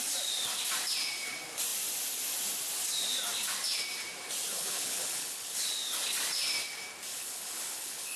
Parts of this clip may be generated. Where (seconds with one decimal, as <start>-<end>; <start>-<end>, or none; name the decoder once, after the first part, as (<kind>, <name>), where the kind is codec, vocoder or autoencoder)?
4.5-5.6 (codec, HILCodec); 7.1-8.2